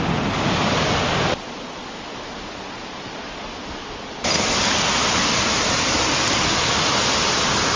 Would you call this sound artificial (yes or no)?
no